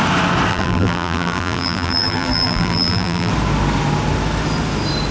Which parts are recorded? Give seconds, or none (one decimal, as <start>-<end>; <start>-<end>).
0.0-0.5; 3.3-5.1